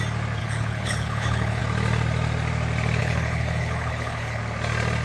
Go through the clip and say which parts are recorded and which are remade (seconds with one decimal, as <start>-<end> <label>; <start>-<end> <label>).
0.0-0.4 recorded; 0.4-1.6 remade; 1.6-3.0 recorded; 3.0-4.4 remade; 4.4-5.0 recorded